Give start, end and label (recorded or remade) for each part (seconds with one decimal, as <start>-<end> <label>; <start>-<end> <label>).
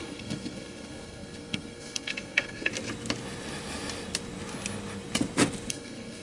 0.0-2.7 remade; 2.7-5.7 recorded; 5.7-6.2 remade